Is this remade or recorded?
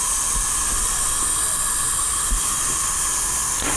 recorded